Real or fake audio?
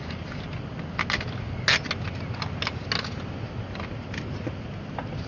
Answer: real